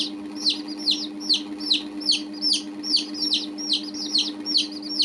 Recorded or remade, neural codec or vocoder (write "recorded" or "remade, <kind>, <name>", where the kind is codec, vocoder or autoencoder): recorded